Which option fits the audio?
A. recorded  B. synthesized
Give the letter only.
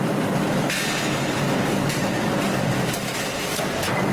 A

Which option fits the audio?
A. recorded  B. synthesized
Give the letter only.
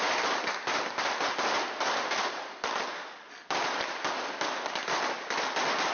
A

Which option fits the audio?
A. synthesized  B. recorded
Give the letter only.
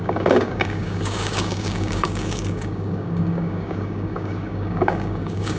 A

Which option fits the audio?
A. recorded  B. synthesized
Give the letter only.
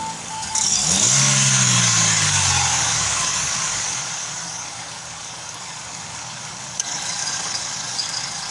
B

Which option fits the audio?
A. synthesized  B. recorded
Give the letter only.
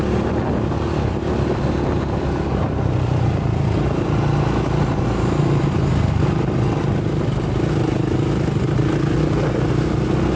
B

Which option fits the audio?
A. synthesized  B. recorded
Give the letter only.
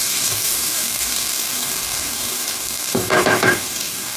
A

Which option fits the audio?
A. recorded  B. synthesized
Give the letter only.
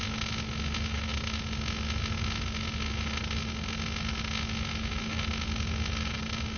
A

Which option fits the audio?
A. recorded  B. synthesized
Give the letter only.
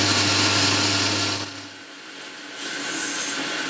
A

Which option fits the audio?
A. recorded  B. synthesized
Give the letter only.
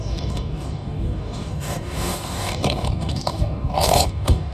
B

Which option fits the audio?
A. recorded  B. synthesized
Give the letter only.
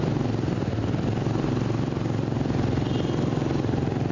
A